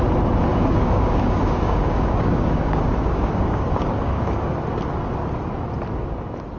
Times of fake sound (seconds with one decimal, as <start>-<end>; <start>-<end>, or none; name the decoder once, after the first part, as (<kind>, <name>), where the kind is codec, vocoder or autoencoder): 0.5-4.5 (codec, DAC)